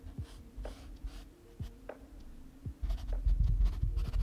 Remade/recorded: recorded